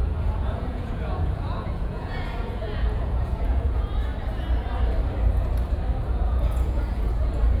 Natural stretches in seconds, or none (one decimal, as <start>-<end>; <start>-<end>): 4.1-6.0